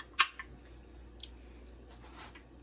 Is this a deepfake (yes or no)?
no